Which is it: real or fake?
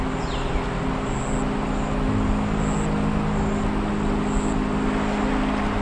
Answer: real